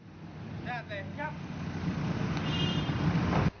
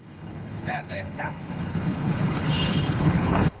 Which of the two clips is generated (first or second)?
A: second